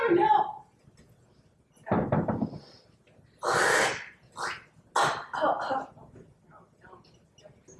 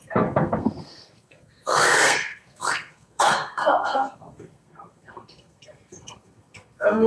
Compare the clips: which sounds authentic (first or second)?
first